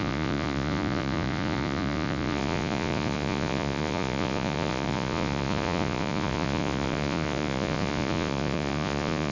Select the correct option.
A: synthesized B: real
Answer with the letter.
A